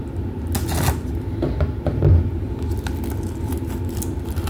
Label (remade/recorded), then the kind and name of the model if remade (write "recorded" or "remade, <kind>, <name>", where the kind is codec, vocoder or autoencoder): recorded